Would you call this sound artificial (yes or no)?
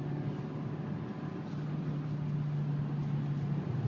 no